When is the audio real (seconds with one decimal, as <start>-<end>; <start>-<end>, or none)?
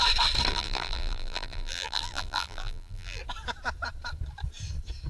0.0-0.5; 3.2-5.1